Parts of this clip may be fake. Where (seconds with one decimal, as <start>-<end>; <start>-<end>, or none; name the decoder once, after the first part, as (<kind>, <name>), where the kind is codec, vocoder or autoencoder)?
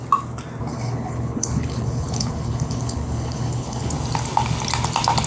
0.7-3.9 (codec, HILCodec)